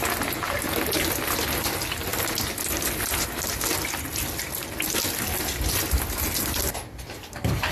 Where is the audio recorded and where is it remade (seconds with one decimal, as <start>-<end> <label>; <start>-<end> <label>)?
0.0-7.7 recorded